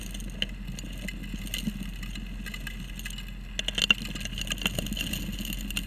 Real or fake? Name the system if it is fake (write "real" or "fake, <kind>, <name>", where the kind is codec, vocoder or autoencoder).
real